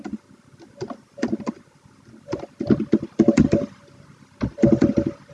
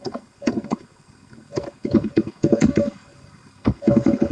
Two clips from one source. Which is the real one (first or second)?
first